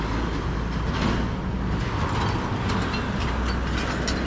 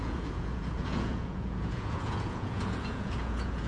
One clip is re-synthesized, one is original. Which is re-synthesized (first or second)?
second